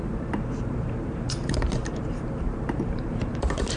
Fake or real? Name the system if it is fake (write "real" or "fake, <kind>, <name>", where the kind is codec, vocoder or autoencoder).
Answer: fake, vocoder, BigVGAN v2